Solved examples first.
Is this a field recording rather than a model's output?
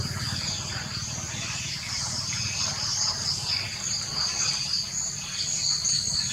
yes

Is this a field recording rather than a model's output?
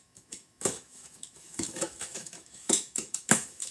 no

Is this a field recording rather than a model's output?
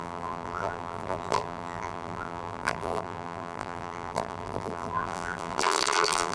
no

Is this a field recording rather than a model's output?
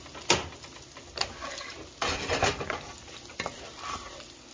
yes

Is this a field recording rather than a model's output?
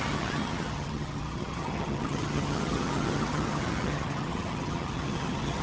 no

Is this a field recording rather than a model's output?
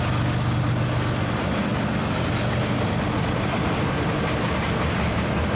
yes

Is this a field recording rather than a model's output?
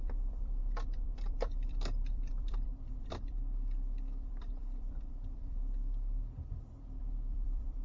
no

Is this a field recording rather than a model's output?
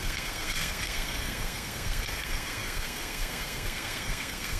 no